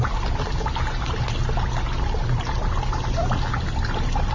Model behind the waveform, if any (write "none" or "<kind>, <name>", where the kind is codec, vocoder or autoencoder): none